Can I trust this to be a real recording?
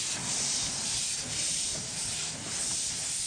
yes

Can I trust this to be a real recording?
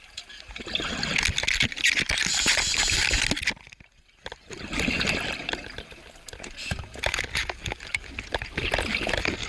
yes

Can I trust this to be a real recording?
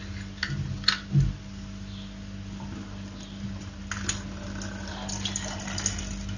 yes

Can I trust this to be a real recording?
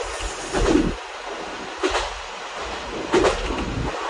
yes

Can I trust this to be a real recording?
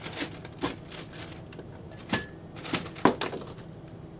yes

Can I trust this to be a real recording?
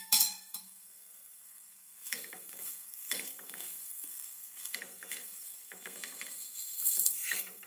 no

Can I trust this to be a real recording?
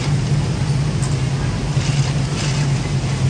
yes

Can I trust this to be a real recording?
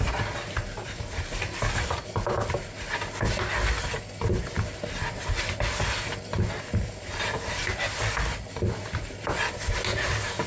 yes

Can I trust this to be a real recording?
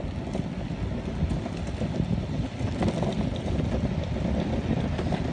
yes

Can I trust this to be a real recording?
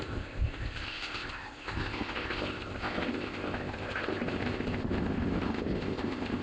no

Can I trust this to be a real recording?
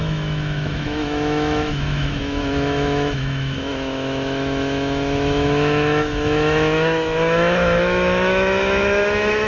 no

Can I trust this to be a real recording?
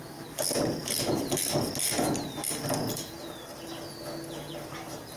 yes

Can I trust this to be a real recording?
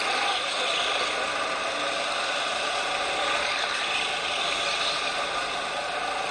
yes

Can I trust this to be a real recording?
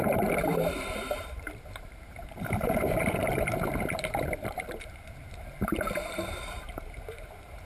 no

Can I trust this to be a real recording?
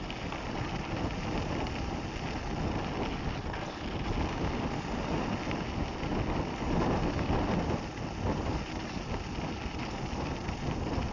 yes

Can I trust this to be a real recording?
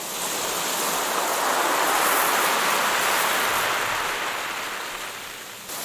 yes